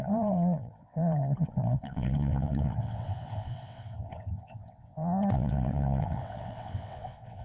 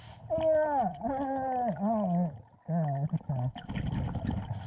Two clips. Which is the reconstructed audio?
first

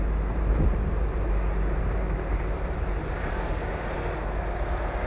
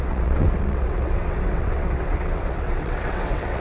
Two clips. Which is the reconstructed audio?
second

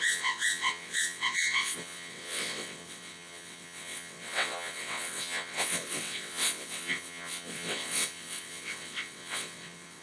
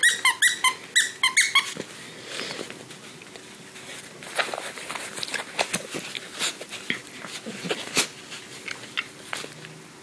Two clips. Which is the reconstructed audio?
first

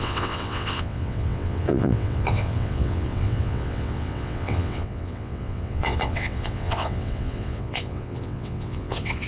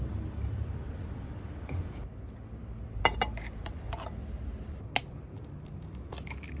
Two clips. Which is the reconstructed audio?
first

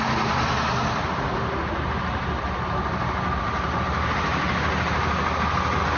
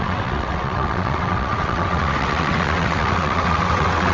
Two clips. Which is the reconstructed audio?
second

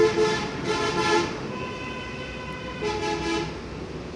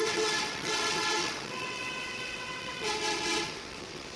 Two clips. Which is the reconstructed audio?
second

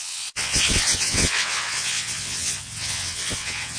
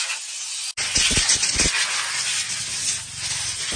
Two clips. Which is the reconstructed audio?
first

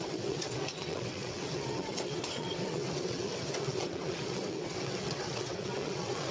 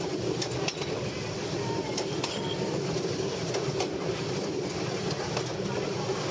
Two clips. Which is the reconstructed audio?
first